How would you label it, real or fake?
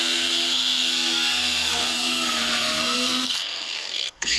fake